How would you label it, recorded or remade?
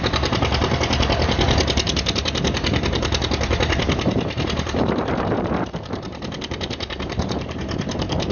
remade